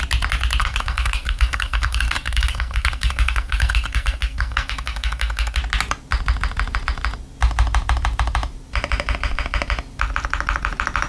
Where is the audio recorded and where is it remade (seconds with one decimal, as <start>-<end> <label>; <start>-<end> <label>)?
0.0-0.6 recorded; 0.6-5.6 remade; 5.6-11.1 recorded